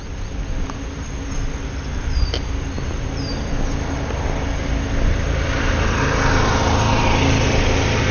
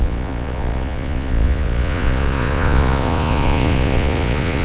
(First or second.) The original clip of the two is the first